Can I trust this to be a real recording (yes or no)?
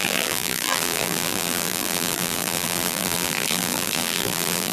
no